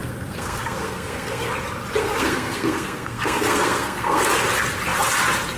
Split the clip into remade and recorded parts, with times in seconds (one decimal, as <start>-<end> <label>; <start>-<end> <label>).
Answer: 0.0-1.5 remade; 1.5-2.0 recorded; 2.0-4.2 remade; 4.2-5.6 recorded